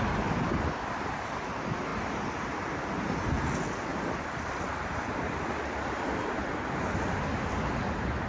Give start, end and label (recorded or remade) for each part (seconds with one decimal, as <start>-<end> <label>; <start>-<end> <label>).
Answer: 0.0-1.9 recorded; 1.9-2.4 remade; 2.4-3.9 recorded; 3.9-5.5 remade; 5.5-8.3 recorded